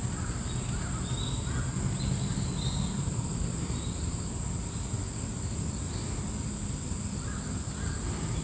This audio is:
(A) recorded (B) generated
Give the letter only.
A